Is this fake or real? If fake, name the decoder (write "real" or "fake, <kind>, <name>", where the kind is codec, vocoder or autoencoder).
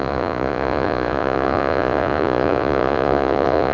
fake, vocoder, Vocos